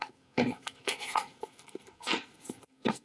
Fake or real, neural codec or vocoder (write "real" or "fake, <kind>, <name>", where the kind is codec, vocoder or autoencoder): fake, codec, SNAC